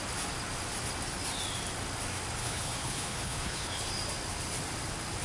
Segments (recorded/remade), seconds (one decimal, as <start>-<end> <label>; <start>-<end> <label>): 0.0-2.4 recorded; 2.4-3.9 remade; 3.9-5.2 recorded